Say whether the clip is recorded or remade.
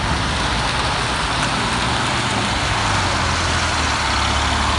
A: recorded